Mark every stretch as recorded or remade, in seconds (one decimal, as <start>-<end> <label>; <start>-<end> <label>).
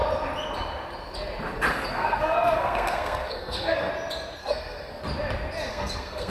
0.0-1.7 recorded; 1.7-3.9 remade; 3.9-4.4 recorded; 4.4-5.0 remade; 5.0-5.7 recorded; 5.7-6.3 remade